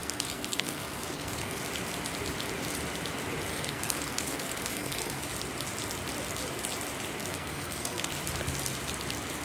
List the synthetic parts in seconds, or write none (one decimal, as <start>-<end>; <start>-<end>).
0.0-1.6; 3.5-5.2; 7.3-8.1